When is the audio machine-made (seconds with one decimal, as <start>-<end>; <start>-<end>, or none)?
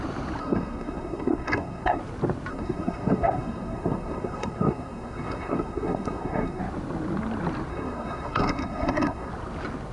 0.4-2.0; 2.5-6.6; 7.7-9.3